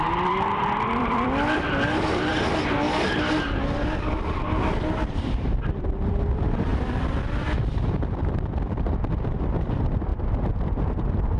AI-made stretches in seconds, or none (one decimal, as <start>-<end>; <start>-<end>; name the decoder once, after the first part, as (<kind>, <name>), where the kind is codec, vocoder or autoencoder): 0.0-2.3 (vocoder, BigVGAN v2); 5.1-11.4